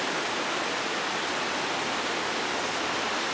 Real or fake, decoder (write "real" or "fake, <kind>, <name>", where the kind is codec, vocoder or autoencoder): real